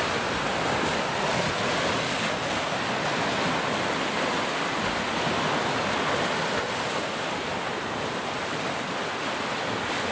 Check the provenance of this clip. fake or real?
real